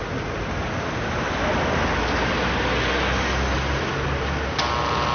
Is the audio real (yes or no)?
yes